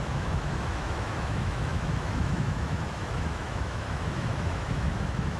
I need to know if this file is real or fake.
fake